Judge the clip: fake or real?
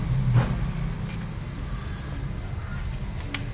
real